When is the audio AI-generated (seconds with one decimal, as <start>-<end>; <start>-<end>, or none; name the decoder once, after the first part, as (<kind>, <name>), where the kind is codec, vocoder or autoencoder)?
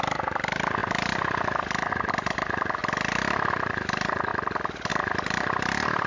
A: 0.0-2.8 (vocoder, BigVGAN v2); 3.5-4.3; 4.9-6.1